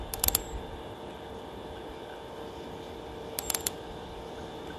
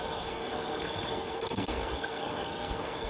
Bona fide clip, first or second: first